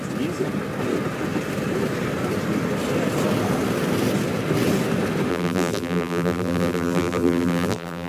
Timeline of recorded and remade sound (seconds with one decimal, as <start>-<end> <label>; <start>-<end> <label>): 0.0-5.3 recorded; 5.3-8.1 remade